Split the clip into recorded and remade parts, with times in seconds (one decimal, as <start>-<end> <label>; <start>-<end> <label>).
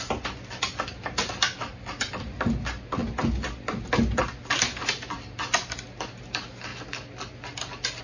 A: 0.0-8.0 recorded